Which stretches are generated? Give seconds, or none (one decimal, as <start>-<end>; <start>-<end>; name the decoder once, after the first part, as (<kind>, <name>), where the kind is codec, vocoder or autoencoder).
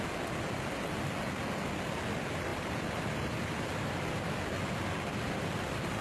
2.5-6.0 (vocoder, BigVGAN v2)